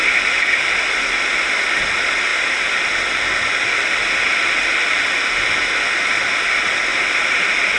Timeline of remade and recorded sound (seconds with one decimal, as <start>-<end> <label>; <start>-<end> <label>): 0.0-6.9 recorded; 6.9-7.8 remade